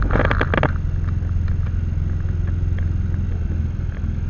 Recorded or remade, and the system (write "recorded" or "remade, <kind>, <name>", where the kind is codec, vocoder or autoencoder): recorded